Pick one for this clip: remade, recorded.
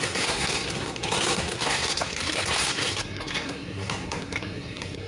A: remade